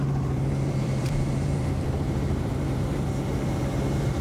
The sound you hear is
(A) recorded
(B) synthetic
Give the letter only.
B